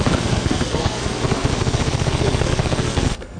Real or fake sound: fake